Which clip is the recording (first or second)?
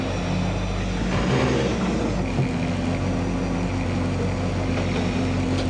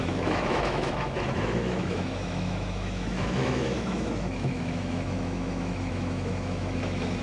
first